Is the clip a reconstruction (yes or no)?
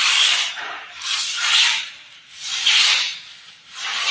yes